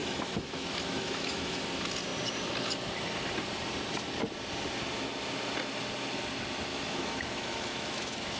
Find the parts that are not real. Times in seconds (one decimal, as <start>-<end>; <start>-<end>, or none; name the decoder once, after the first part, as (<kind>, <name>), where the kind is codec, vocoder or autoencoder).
0.0-1.6 (autoencoder, DAC-VAE); 6.7-8.4